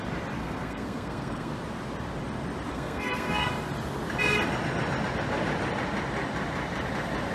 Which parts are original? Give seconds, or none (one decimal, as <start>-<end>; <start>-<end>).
0.0-0.4; 1.5-2.7; 3.5-7.3